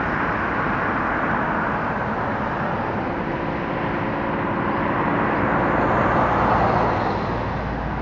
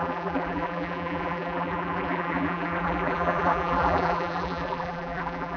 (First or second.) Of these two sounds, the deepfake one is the second